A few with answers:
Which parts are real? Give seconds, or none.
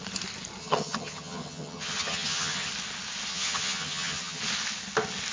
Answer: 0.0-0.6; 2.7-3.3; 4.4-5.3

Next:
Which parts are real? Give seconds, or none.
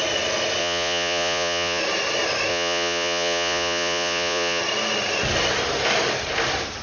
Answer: 0.0-0.6; 1.8-2.5; 4.6-6.8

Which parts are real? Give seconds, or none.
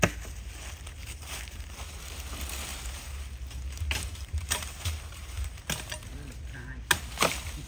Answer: 0.0-1.0; 1.8-2.7; 5.6-7.7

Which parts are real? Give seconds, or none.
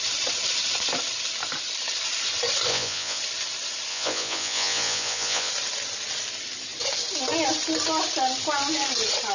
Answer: 0.0-2.7; 3.2-3.9; 5.5-9.3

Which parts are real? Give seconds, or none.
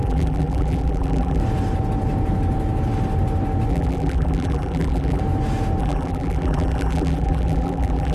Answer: 1.4-3.7; 5.2-5.8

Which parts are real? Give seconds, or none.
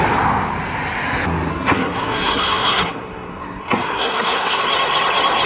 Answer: 0.0-1.5; 4.6-5.5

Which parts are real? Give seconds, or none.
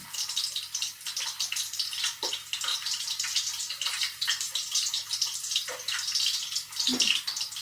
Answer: 0.0-2.7; 5.6-7.6